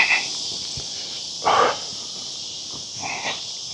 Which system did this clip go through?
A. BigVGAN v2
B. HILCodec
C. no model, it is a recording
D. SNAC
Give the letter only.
A